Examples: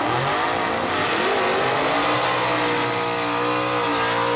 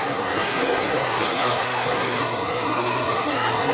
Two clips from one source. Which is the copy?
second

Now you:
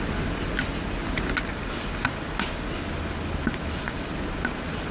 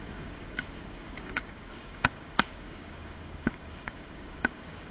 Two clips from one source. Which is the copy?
second